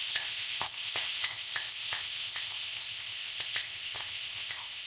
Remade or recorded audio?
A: remade